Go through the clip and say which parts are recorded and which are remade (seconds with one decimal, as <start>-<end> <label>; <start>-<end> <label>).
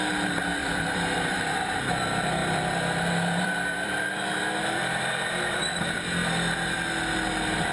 0.0-0.6 recorded; 0.6-1.9 remade; 1.9-2.4 recorded; 2.4-5.8 remade; 5.8-7.7 recorded